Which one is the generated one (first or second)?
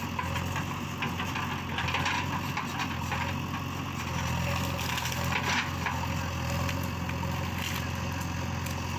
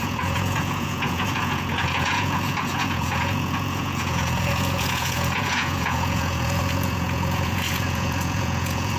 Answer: second